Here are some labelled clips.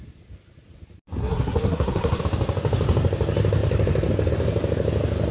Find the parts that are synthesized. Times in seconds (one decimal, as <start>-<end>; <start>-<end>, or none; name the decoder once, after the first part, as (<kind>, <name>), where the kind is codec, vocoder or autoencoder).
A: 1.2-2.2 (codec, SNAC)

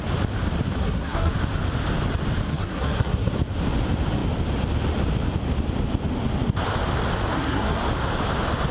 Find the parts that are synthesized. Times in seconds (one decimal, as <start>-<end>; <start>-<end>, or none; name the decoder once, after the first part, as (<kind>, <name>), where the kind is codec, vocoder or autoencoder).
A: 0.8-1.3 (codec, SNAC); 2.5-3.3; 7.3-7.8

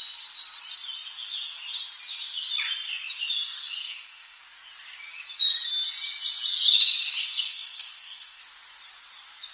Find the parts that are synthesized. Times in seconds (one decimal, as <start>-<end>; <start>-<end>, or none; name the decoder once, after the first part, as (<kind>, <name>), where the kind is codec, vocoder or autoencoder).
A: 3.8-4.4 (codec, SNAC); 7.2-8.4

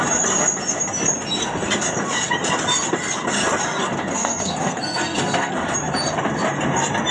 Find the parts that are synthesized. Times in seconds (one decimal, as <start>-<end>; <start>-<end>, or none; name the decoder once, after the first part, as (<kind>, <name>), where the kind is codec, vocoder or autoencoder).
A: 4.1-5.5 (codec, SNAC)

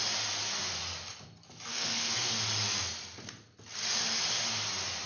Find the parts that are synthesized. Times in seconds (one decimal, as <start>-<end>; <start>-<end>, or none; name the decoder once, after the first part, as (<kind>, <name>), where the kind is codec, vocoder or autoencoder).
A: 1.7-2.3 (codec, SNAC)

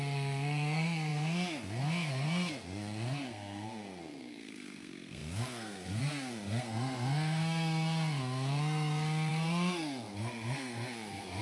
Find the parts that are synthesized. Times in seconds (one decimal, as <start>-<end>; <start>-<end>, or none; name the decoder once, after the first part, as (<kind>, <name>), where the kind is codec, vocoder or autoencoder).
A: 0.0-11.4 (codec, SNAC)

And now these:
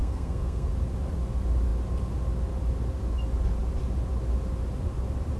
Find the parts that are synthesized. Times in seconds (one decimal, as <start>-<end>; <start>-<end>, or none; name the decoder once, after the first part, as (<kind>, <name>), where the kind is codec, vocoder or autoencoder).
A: 0.0-0.7 (codec, SNAC)

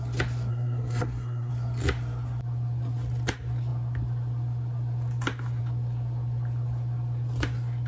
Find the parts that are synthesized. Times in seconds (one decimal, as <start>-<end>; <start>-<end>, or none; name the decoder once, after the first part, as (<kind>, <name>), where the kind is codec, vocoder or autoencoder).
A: 0.5-1.5 (codec, SNAC)